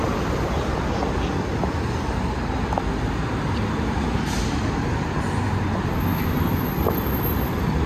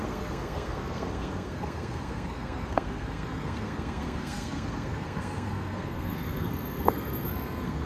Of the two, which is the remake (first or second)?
second